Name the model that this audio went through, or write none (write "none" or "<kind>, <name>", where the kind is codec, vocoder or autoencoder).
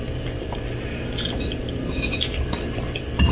none